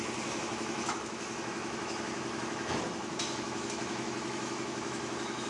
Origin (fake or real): fake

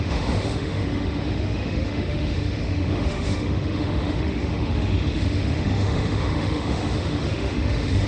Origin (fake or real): fake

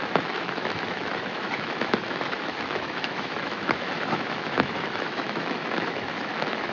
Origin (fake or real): fake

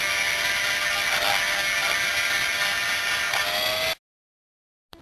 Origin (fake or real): real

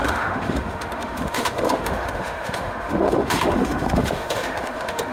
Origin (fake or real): fake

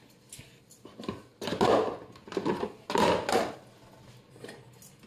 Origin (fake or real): real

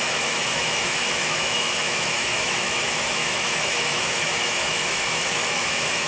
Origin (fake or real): fake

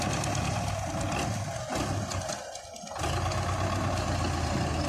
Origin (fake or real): real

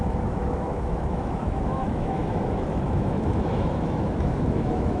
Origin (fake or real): fake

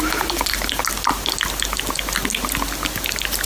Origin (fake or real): real